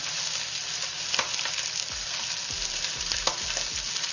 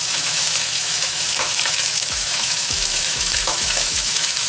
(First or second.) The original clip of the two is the first